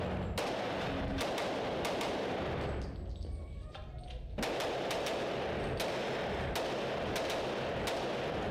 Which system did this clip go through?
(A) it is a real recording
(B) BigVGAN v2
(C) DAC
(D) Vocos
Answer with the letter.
A